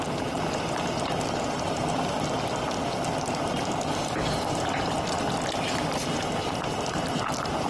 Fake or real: real